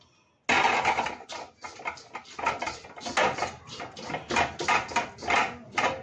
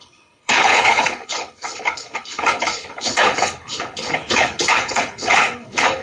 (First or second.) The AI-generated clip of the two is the second